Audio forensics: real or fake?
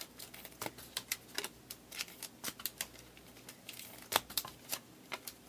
real